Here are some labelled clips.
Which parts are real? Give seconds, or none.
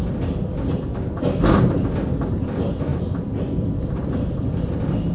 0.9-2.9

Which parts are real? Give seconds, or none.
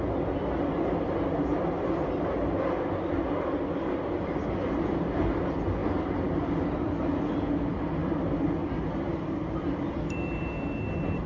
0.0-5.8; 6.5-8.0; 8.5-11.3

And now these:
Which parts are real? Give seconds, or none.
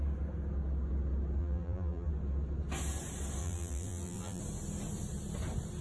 0.0-1.4; 2.1-3.4; 4.4-5.8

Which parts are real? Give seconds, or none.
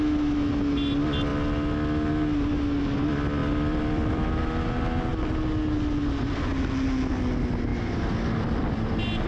0.0-3.4; 4.4-7.7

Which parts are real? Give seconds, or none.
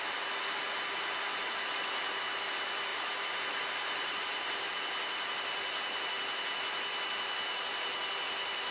0.0-2.9; 4.7-8.7